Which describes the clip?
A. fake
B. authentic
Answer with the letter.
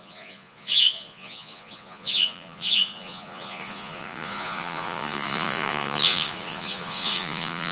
A